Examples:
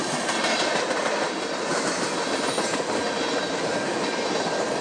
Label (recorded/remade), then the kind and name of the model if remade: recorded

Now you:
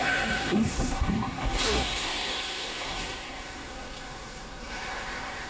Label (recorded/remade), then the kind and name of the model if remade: remade, codec, SNAC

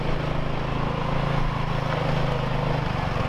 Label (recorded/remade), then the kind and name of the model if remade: recorded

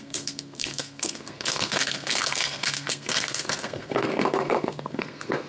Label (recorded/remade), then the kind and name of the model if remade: remade, codec, SNAC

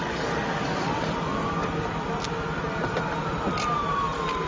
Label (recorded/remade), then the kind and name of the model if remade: recorded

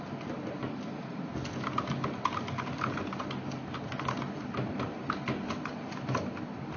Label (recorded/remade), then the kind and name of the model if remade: recorded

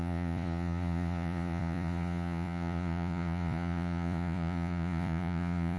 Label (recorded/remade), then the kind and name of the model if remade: remade, vocoder, Vocos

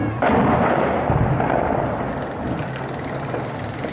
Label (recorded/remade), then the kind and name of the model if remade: recorded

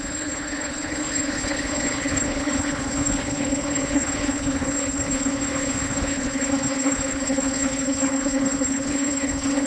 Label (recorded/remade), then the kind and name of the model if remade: remade, codec, HILCodec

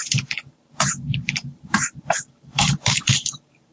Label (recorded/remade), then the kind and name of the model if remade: remade, vocoder, BigVGAN v2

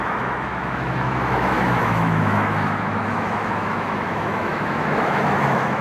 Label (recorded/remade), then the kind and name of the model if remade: remade, autoencoder, DAC-VAE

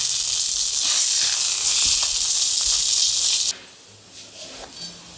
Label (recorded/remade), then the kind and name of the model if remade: recorded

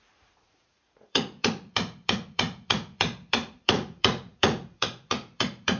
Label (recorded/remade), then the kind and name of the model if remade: remade, vocoder, Vocos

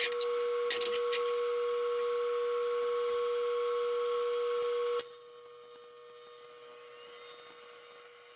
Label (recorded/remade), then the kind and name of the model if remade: recorded